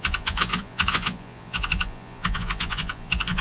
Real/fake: fake